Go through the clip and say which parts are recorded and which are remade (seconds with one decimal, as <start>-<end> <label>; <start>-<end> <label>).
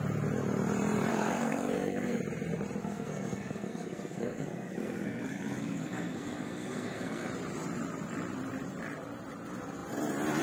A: 0.0-1.1 recorded; 1.1-2.2 remade; 2.2-2.8 recorded; 2.8-7.3 remade; 7.3-10.4 recorded